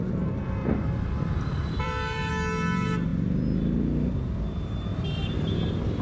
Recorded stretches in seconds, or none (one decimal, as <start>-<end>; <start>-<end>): 0.0-0.6; 2.3-4.9